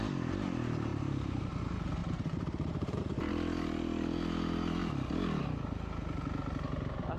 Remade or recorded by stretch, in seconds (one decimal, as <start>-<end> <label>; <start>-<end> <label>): 0.0-0.9 recorded; 0.9-1.5 remade; 1.5-2.0 recorded; 2.0-3.3 remade; 3.3-7.2 recorded